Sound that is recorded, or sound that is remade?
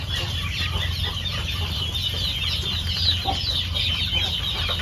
recorded